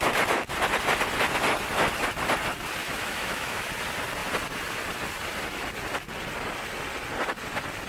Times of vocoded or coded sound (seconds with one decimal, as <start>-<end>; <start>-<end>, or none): 2.8-3.7